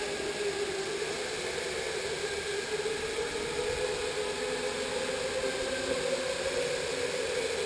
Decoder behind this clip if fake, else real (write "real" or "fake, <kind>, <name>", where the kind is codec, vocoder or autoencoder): real